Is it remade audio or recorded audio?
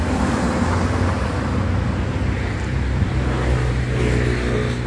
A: recorded